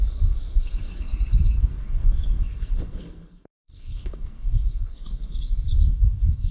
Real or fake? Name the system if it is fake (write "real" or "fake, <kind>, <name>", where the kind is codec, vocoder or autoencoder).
fake, codec, SNAC